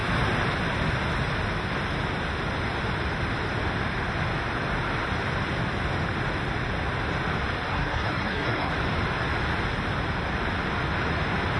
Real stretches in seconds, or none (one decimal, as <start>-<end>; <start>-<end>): 0.0-7.7; 8.7-11.6